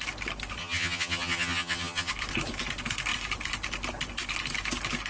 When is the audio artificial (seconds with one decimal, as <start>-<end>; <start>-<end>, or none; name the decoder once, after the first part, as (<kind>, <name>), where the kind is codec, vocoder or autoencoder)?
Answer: 0.6-2.1 (vocoder, HiFi-GAN)

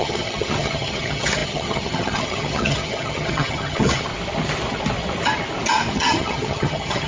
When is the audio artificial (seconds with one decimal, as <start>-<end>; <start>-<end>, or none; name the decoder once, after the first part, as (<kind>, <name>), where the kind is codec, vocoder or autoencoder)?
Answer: 0.0-4.1 (vocoder, HiFi-GAN); 5.9-7.1

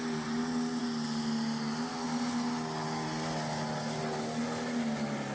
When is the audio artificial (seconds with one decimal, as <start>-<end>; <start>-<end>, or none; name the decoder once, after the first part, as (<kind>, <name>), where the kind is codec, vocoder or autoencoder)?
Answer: none

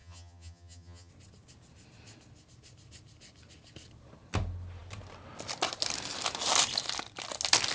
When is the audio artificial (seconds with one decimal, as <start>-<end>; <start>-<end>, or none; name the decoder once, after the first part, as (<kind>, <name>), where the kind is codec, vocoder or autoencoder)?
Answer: 0.0-1.1 (vocoder, HiFi-GAN)

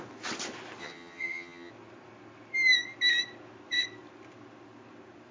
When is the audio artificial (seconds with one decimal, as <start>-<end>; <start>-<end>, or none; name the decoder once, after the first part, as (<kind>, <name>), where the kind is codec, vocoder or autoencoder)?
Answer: 0.8-1.7 (vocoder, HiFi-GAN)

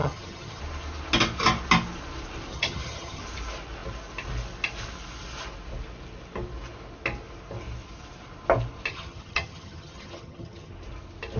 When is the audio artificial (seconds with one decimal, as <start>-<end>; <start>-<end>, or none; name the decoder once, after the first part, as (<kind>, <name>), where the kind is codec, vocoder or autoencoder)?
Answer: 0.0-0.6 (vocoder, HiFi-GAN); 2.5-3.2; 8.9-10.7